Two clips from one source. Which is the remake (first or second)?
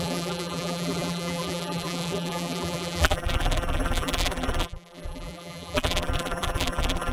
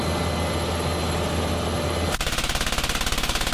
first